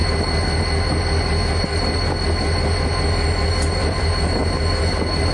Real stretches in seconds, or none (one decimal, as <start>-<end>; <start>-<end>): 0.0-3.8; 4.4-5.3